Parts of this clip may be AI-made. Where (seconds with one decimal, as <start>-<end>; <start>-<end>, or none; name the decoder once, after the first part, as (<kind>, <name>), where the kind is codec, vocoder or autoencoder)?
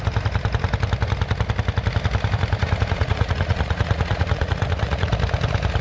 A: 2.6-5.1 (vocoder, Vocos)